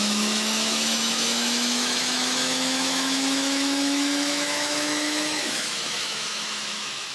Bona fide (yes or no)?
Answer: no